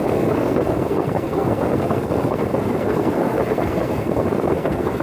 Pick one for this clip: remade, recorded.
remade